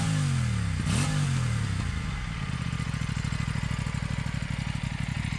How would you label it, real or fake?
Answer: real